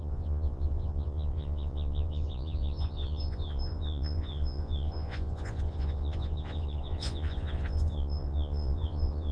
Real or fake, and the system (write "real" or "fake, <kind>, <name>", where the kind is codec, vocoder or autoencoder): fake, vocoder, Vocos